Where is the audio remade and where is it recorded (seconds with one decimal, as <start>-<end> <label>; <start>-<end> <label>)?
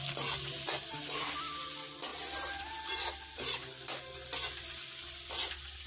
0.0-5.9 recorded